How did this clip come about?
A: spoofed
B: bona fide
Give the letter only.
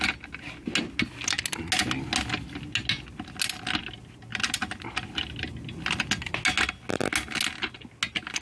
B